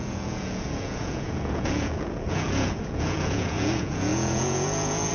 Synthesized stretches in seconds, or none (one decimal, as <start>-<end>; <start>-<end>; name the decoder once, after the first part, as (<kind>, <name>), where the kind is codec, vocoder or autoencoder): 0.0-5.1 (vocoder, Vocos)